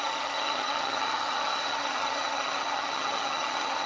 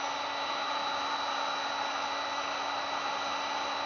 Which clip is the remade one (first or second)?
first